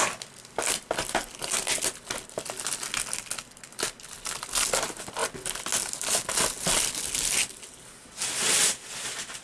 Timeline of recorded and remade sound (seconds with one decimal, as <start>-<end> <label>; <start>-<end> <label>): 0.0-9.4 recorded